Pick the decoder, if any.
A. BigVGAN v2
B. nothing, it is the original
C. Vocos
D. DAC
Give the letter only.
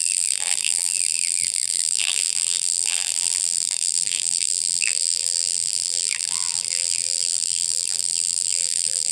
A